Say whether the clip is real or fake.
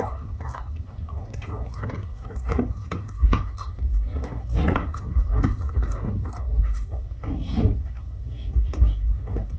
fake